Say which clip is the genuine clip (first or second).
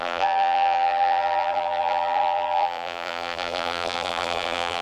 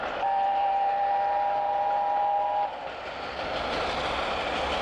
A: second